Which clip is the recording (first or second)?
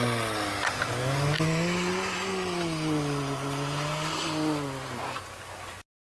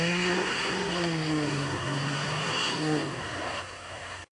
first